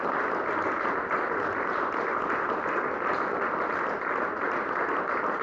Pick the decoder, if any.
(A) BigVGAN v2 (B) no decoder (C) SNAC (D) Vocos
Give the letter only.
B